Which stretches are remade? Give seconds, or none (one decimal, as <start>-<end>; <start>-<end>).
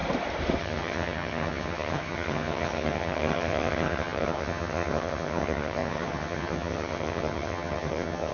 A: 0.6-8.3